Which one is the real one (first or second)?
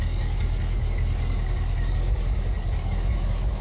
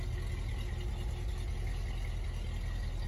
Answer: second